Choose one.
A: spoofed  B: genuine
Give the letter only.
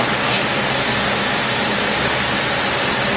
B